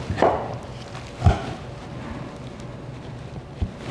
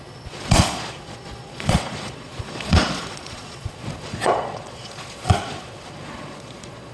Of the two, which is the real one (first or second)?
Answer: first